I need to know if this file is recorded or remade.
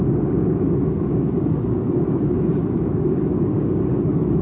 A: remade